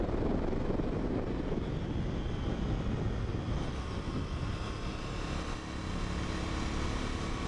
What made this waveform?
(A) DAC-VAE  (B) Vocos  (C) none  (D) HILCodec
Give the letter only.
C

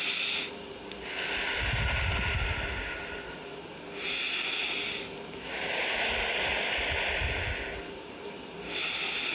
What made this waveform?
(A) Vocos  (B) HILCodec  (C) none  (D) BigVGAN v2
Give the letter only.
C